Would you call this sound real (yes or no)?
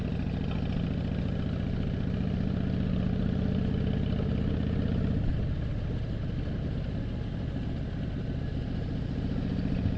yes